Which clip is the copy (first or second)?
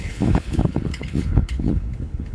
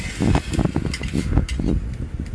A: first